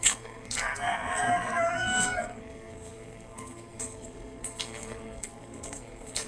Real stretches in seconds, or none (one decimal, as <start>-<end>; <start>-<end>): none